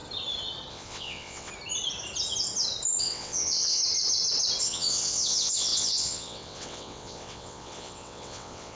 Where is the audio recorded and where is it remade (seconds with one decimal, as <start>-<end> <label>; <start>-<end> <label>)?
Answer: 0.0-0.7 recorded; 0.7-1.5 remade; 1.5-3.0 recorded; 3.0-3.8 remade; 3.8-4.6 recorded; 4.6-8.8 remade